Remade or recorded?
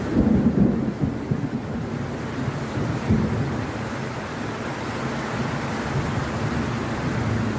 recorded